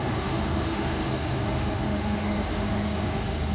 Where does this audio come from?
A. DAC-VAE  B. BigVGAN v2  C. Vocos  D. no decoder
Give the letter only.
A